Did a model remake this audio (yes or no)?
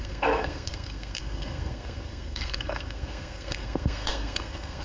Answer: yes